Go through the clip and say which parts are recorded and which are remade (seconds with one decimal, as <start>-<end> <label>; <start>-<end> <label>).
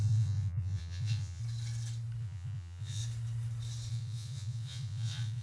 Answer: 0.0-1.4 remade; 1.4-2.2 recorded; 2.2-3.0 remade; 3.0-3.9 recorded; 3.9-5.4 remade